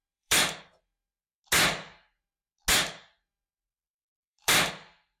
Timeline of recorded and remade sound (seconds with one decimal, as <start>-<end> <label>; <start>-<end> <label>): 0.0-1.1 remade; 1.1-4.0 recorded; 4.0-4.7 remade; 4.7-5.2 recorded